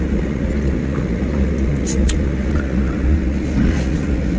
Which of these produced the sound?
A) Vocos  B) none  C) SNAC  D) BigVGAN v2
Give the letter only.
A